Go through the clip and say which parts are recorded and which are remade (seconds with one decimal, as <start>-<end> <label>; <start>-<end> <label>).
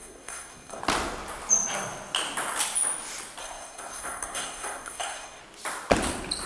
0.0-0.8 remade; 0.8-3.4 recorded; 3.4-5.4 remade; 5.4-6.5 recorded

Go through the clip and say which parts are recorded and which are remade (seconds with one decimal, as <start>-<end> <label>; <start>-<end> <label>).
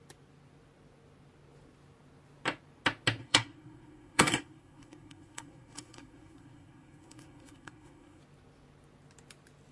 0.0-3.2 recorded; 3.2-8.2 remade; 8.2-9.7 recorded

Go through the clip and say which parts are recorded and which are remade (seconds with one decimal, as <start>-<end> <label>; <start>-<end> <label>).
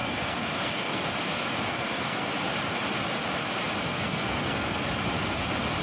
0.0-1.1 remade; 1.1-1.7 recorded; 1.7-2.3 remade; 2.3-3.9 recorded; 3.9-4.9 remade; 4.9-5.8 recorded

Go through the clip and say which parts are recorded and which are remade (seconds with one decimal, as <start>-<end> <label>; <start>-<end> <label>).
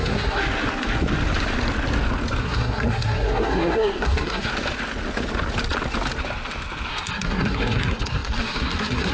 0.0-0.4 remade; 0.4-2.4 recorded; 2.4-4.5 remade; 4.5-6.9 recorded; 6.9-9.1 remade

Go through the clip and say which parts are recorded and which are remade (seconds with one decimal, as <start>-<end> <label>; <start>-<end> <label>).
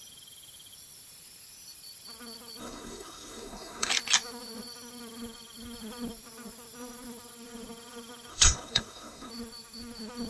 0.0-2.6 recorded; 2.6-3.9 remade; 3.9-8.3 recorded; 8.3-9.3 remade; 9.3-10.3 recorded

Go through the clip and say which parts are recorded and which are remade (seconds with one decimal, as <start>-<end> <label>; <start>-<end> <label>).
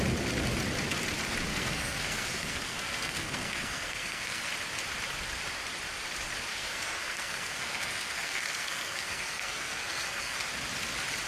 0.0-1.5 recorded; 1.5-4.5 remade; 4.5-6.5 recorded; 6.5-10.5 remade; 10.5-11.3 recorded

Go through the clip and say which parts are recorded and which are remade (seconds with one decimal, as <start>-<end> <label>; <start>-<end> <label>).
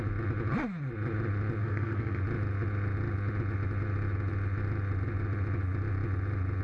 0.0-1.6 recorded; 1.6-2.2 remade; 2.2-6.6 recorded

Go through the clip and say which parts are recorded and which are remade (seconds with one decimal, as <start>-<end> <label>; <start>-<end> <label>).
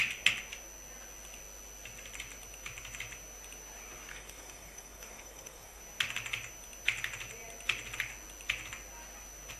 0.0-4.1 recorded; 4.1-5.8 remade; 5.8-9.6 recorded